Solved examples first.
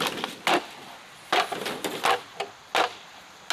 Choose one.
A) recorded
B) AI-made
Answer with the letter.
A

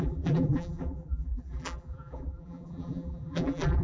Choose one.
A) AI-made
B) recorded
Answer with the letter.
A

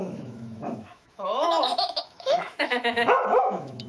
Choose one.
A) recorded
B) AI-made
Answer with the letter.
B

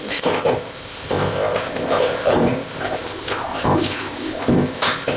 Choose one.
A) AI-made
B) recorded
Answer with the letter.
A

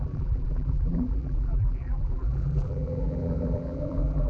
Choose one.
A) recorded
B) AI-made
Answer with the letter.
B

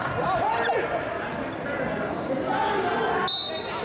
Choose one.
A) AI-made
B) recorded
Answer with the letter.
B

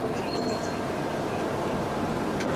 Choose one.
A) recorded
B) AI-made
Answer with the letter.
A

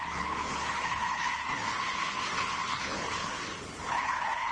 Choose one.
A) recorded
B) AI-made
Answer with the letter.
B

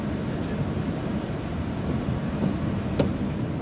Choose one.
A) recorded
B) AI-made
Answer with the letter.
A